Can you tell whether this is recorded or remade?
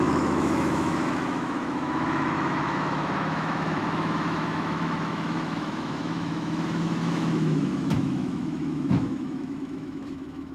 remade